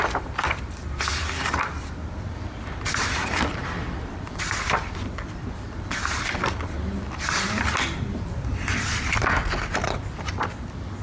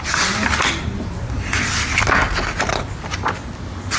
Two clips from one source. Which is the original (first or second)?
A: second